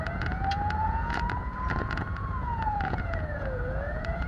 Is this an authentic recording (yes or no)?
no